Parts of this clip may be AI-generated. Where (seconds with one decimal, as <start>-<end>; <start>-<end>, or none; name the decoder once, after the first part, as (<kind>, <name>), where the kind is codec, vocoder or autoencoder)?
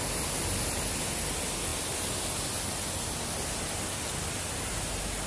none